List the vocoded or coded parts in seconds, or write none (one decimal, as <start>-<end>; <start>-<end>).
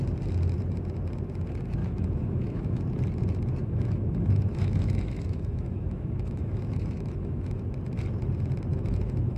1.8-2.8; 3.6-7.6; 8.7-9.4